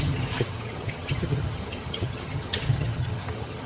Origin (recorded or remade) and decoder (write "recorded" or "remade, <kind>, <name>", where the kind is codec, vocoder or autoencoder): remade, vocoder, HiFi-GAN